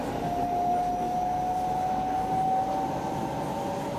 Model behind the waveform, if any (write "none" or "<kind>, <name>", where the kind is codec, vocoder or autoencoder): none